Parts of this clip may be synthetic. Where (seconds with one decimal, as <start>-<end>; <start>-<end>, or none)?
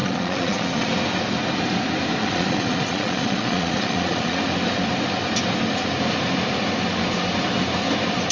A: 0.0-0.9; 2.2-4.4